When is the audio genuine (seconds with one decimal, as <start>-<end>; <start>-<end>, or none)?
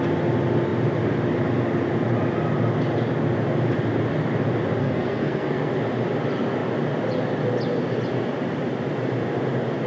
0.0-4.8; 5.7-9.9